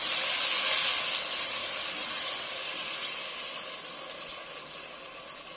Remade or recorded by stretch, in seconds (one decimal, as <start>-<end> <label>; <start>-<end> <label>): 0.0-5.6 recorded